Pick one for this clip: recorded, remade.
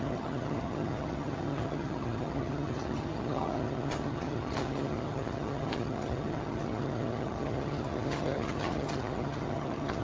remade